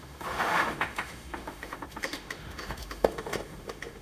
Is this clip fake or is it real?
fake